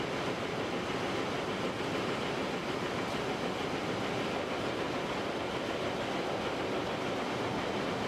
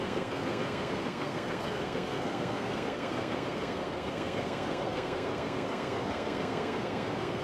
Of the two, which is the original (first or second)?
first